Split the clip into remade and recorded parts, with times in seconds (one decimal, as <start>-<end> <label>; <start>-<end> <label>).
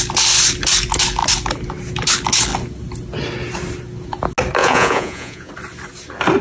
0.0-4.6 recorded; 4.6-5.5 remade; 5.5-6.4 recorded